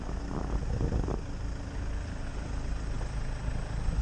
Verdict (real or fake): real